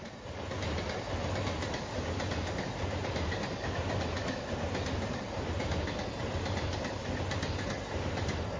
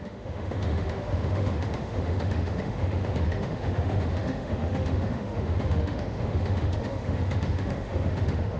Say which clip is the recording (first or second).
first